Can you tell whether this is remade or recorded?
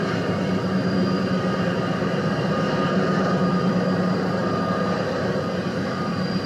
remade